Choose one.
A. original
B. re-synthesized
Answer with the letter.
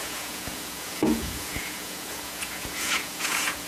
B